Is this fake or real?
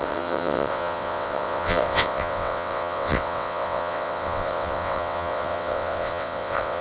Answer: fake